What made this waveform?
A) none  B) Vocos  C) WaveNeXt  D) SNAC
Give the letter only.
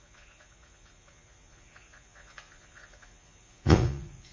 B